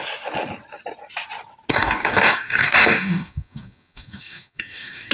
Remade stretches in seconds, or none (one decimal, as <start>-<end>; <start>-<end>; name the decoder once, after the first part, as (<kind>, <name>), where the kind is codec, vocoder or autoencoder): 1.7-5.1 (codec, DAC)